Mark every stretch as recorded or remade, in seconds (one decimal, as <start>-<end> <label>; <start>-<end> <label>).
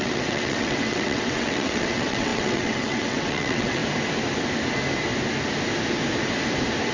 0.0-3.8 remade; 3.8-6.9 recorded